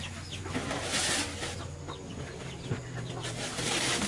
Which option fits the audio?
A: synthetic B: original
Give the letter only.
B